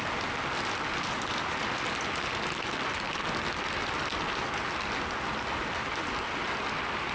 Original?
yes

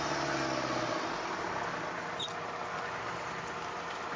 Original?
yes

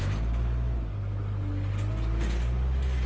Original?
yes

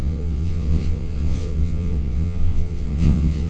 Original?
no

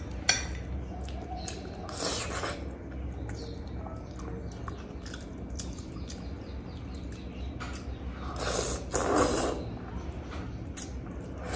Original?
yes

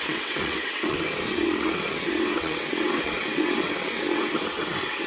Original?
no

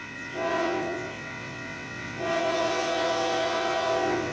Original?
no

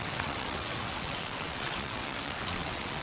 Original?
no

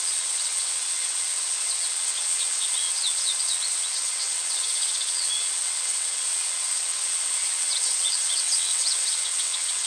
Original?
no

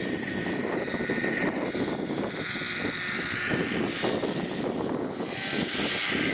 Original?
yes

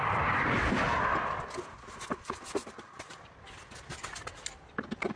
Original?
yes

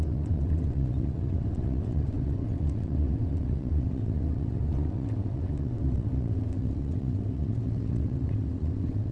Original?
no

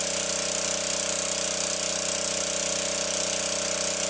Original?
yes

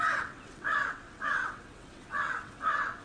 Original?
no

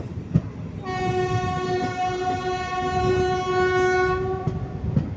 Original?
yes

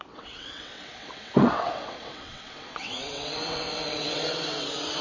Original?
no